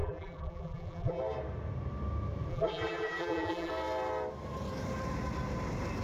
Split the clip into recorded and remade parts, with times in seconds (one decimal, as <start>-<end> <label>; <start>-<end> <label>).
0.0-1.2 remade; 1.2-2.5 recorded; 2.5-3.7 remade; 3.7-6.0 recorded